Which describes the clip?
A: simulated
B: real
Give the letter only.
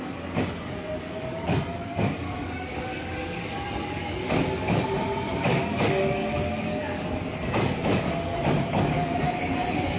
A